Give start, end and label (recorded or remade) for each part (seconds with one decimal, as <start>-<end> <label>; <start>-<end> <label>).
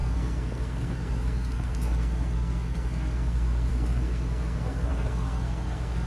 0.0-6.1 remade